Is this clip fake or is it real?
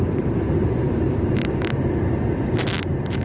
fake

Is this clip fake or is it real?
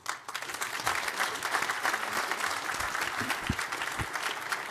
real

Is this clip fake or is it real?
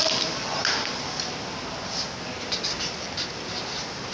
real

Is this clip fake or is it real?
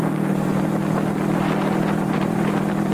fake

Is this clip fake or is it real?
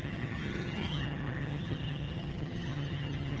fake